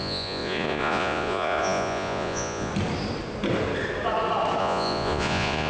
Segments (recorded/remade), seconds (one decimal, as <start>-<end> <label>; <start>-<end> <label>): 0.0-2.7 remade; 2.7-4.6 recorded; 4.6-5.7 remade